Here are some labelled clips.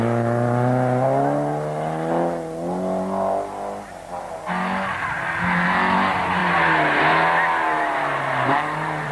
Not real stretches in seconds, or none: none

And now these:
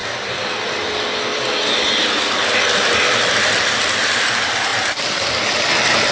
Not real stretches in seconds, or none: 0.0-3.7 (vocoder, BigVGAN v2)

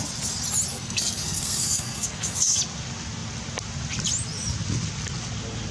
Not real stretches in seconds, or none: 0.7-2.6 (codec, SNAC)

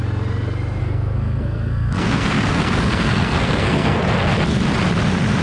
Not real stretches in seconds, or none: 0.8-4.0 (codec, SNAC)

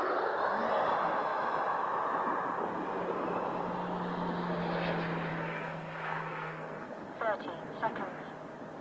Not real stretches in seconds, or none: 5.3-7.2 (codec, SNAC)

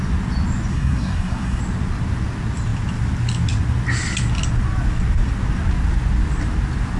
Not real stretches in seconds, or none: 0.7-1.6 (codec, SNAC)

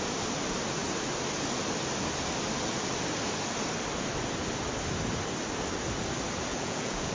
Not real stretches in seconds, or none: 6.5-7.1 (vocoder, Vocos)